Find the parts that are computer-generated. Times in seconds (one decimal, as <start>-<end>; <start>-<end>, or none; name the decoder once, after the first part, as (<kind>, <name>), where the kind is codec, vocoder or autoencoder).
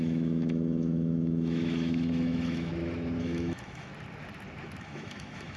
0.0-2.7 (autoencoder, DAC-VAE); 3.2-3.9; 4.8-5.6